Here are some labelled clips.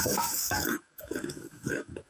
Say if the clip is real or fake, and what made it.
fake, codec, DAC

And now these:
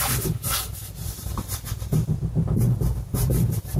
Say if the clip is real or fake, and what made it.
fake, vocoder, BigVGAN v2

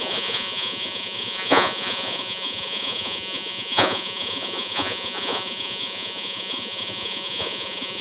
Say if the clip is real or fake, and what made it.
fake, vocoder, Vocos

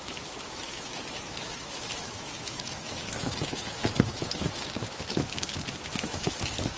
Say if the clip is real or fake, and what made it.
fake, autoencoder, DAC-VAE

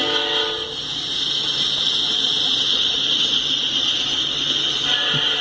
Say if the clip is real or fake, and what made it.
real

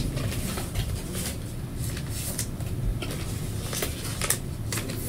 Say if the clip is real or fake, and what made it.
real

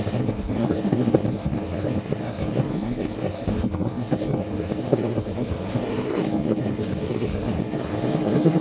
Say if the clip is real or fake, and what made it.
fake, codec, SNAC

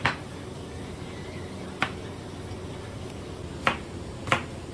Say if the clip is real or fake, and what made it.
real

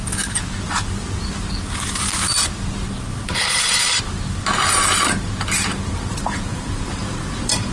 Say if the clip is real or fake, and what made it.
fake, vocoder, BigVGAN v2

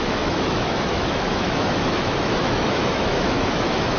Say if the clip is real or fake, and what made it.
fake, autoencoder, DAC-VAE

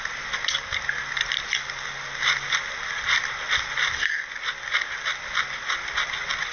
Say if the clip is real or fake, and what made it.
real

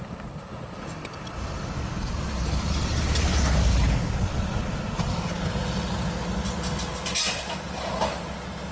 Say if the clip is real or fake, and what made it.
real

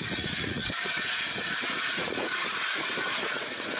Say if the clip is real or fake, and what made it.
fake, vocoder, Vocos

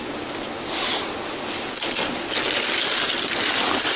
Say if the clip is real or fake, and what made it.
real